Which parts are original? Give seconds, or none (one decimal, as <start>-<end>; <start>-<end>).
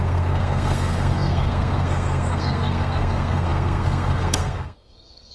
none